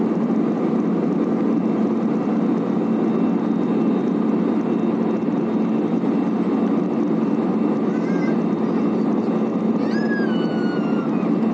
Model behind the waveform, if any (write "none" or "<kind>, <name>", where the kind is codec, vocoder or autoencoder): none